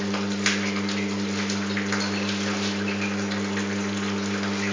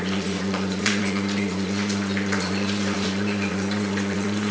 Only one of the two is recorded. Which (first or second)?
first